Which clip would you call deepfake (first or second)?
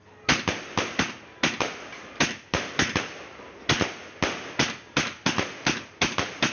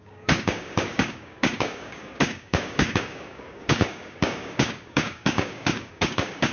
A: second